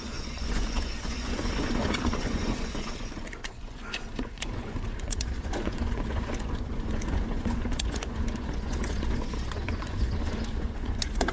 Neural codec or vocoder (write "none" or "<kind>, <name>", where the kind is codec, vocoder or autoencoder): vocoder, Vocos